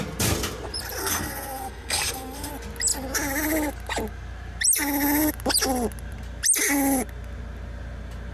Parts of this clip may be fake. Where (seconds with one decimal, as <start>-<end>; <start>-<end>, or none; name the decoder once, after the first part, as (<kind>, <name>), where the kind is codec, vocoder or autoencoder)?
1.0-2.5 (codec, SNAC)